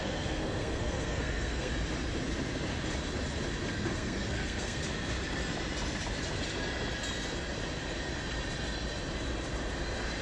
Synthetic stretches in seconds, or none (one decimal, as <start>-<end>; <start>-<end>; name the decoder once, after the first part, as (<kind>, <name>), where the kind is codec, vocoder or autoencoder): 0.0-1.7 (codec, SNAC); 3.7-4.8